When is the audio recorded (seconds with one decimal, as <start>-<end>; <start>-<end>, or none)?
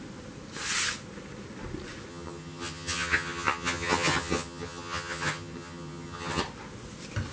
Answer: 0.0-2.1; 6.4-7.3